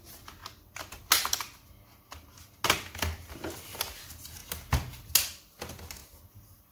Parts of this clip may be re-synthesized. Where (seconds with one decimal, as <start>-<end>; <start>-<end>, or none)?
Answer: none

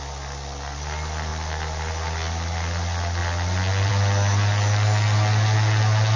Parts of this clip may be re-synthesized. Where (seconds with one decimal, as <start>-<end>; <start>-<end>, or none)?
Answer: none

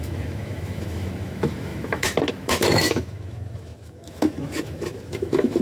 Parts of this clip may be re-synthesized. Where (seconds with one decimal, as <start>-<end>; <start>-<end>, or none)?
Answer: 0.0-5.6

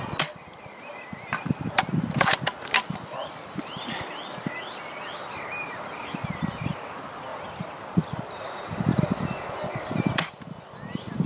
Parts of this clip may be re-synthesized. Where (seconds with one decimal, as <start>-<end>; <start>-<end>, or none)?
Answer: 7.3-10.6